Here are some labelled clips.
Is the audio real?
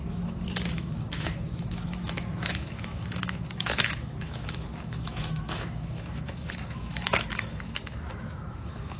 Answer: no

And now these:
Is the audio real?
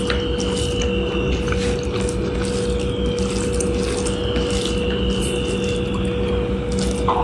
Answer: yes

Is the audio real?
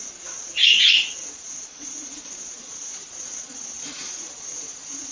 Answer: no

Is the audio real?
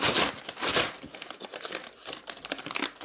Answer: yes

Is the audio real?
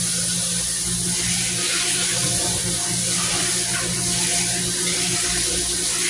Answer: yes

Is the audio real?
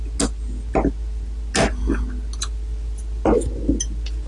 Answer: yes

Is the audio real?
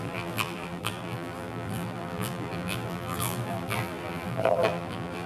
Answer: no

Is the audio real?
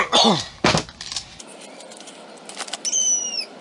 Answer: yes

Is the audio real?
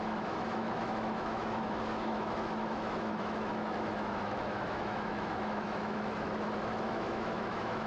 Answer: no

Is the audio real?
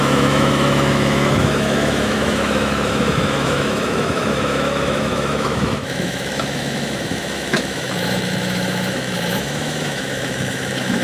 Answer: no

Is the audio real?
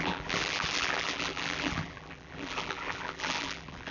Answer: no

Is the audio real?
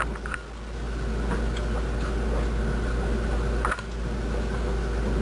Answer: yes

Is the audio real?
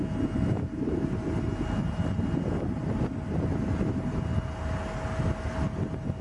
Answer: yes